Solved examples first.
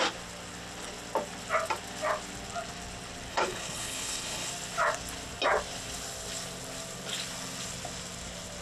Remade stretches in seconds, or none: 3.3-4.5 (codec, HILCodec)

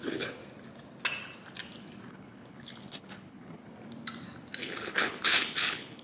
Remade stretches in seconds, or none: 0.0-0.4 (codec, HILCodec); 2.1-3.6; 4.6-6.0

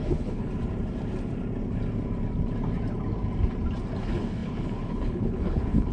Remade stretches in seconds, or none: 0.0-0.5 (codec, HILCodec); 4.0-5.9

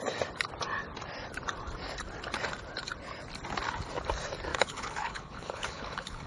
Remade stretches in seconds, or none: 4.5-6.3 (codec, HILCodec)

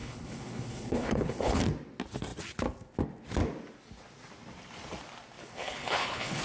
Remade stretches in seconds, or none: 0.0-1.6 (codec, HILCodec); 5.4-6.4

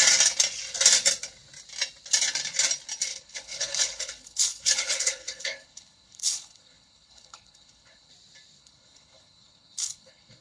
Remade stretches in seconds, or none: 3.1-8.1 (codec, HILCodec); 8.6-10.4